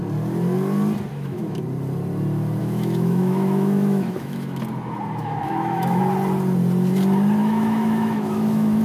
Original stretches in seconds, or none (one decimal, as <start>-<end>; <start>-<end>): 0.0-1.1; 1.6-2.6; 4.6-5.2; 6.0-7.4